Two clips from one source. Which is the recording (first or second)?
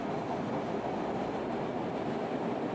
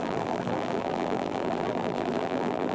first